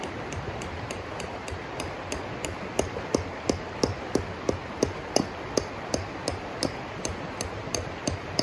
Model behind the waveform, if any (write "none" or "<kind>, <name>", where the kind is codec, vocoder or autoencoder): none